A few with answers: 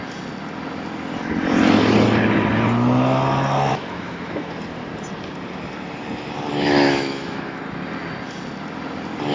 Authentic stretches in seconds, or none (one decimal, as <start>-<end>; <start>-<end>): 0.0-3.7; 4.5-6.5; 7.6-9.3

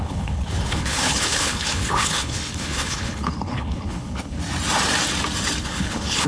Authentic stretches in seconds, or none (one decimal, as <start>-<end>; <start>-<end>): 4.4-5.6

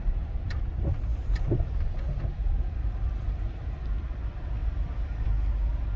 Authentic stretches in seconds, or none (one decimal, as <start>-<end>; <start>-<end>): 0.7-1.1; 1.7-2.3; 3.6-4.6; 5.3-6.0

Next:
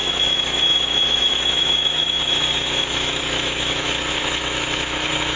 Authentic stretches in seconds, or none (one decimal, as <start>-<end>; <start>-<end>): none

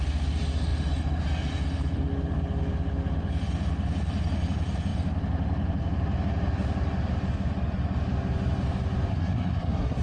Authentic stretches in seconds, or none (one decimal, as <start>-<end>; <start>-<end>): 0.0-9.1

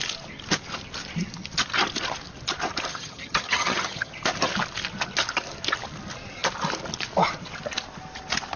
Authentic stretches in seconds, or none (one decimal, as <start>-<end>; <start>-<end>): 0.0-2.9; 4.1-8.6

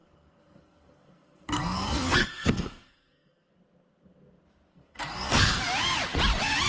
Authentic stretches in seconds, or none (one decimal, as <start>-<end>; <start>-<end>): 3.5-4.7; 5.6-6.7

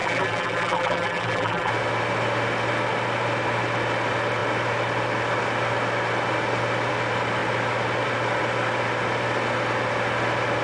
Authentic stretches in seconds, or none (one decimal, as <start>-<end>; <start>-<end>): 1.7-10.6